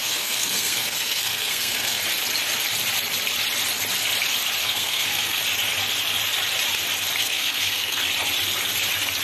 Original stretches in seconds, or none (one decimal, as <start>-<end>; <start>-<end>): 2.0-4.6; 5.4-7.2; 8.0-9.2